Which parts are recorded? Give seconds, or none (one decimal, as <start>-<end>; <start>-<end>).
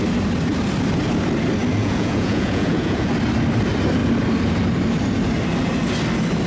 0.0-1.8; 3.1-6.5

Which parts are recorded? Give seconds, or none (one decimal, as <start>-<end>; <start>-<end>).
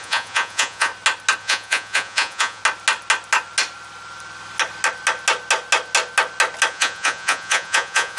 0.9-1.4; 2.6-6.7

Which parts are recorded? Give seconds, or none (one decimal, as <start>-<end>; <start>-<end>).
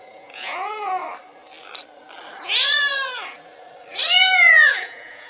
1.0-4.2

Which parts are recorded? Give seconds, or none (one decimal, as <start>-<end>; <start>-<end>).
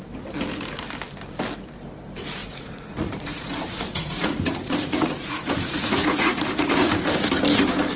0.0-2.4; 6.9-8.0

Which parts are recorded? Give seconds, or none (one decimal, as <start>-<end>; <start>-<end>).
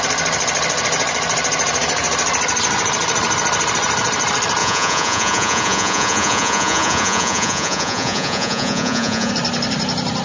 0.0-4.6; 9.3-10.2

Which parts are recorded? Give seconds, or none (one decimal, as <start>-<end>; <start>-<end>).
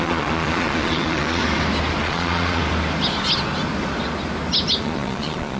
1.4-2.0; 2.6-4.8